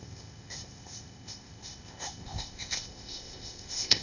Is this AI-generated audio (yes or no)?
yes